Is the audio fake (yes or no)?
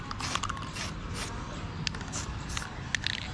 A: no